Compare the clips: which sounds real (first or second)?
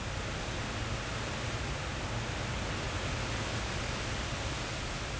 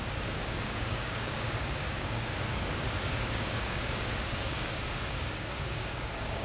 first